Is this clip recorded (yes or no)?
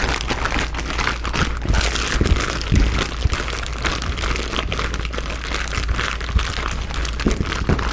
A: yes